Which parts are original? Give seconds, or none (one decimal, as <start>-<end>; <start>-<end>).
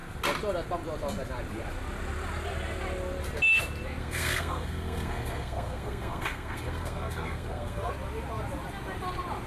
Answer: 0.0-4.0; 7.9-9.5